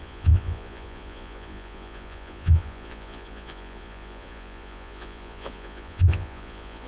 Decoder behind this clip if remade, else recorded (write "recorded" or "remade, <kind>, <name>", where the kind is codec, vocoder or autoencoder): remade, vocoder, Vocos